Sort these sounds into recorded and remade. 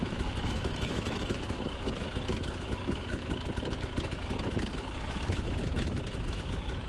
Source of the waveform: remade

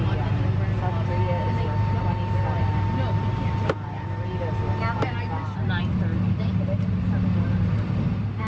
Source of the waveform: recorded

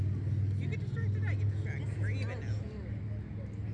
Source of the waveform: recorded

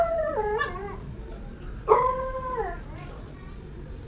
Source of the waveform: recorded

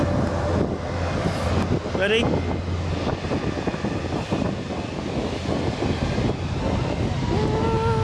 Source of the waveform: recorded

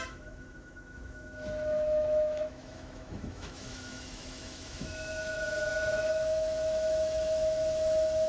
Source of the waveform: remade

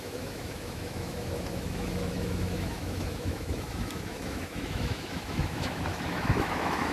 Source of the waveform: remade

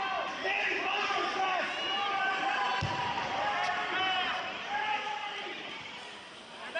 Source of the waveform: recorded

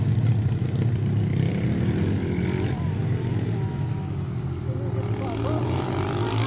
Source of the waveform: recorded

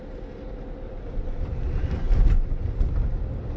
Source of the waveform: recorded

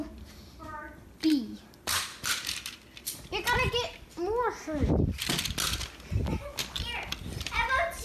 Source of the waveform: recorded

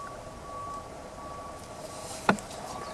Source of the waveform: recorded